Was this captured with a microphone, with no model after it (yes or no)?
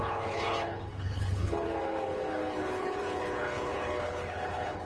no